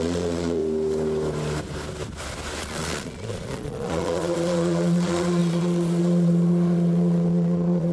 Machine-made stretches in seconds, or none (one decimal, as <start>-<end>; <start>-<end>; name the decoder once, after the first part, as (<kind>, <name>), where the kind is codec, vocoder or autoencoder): 0.0-0.6 (vocoder, Vocos); 2.6-7.9